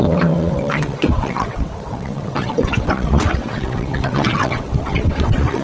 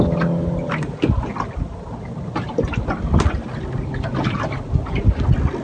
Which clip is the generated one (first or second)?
first